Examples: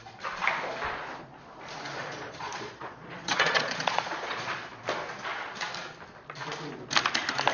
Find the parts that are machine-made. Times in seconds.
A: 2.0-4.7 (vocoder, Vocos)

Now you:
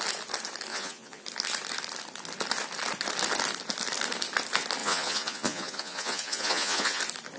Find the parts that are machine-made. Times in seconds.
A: 0.7-1.2 (vocoder, Vocos); 4.8-7.0

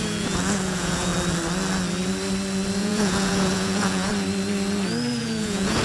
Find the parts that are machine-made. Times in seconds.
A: 0.0-1.1 (vocoder, Vocos); 2.8-4.1; 5.2-5.8

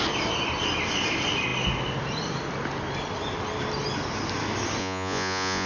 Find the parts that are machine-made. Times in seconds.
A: 4.8-5.7 (vocoder, Vocos)